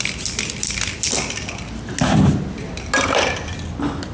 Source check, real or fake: real